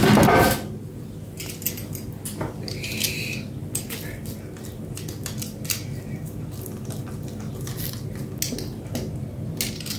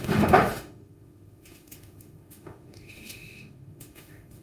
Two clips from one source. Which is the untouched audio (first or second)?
first